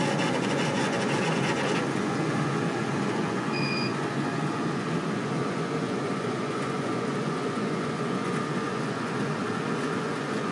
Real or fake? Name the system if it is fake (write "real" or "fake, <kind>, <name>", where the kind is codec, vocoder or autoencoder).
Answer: fake, vocoder, Vocos